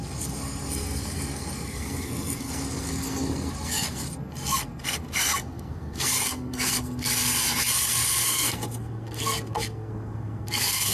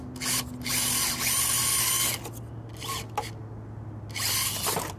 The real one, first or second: second